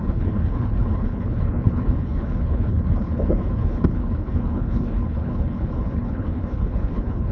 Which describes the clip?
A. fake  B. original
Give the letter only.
A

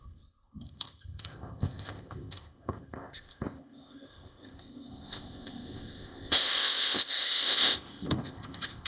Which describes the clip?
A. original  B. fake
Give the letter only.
B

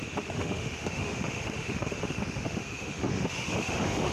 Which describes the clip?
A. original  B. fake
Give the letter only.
B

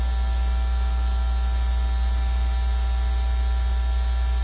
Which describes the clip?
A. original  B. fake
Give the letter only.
A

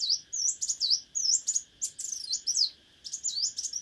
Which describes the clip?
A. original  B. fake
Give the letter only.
A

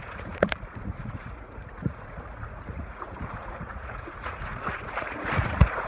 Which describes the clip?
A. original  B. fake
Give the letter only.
B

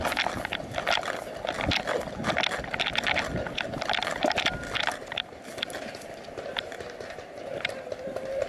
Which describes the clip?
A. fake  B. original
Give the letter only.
B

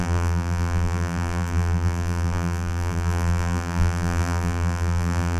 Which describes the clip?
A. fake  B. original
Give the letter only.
A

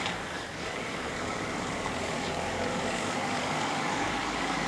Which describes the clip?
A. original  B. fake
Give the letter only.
B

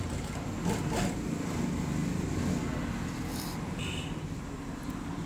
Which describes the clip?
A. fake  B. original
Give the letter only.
B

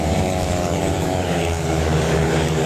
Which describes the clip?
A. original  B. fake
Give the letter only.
B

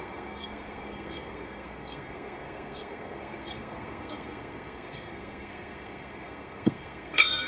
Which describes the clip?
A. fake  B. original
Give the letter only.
A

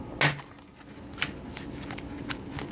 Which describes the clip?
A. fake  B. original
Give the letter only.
B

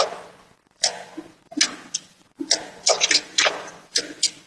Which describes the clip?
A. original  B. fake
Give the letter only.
B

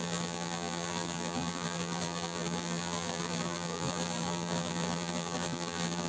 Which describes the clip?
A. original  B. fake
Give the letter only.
B